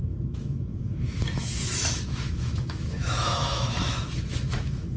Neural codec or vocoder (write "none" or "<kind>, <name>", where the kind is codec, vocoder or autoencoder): autoencoder, DAC-VAE